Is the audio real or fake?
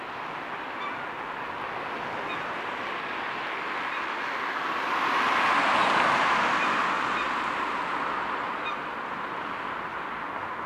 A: real